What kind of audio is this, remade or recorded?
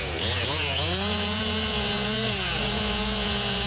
remade